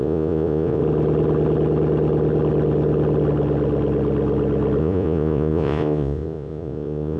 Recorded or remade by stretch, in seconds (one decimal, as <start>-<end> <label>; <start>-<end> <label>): 0.0-0.8 remade; 0.8-4.8 recorded; 4.8-7.2 remade